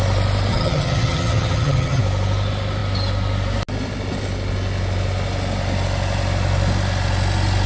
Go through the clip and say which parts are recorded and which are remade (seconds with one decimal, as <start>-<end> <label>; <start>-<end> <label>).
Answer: 0.0-0.5 recorded; 0.5-2.0 remade; 2.0-7.7 recorded